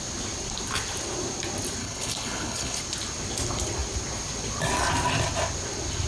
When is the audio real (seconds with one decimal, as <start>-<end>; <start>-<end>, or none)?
0.0-1.8; 2.8-6.1